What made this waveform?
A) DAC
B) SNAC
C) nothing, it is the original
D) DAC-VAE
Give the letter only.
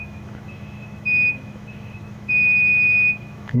D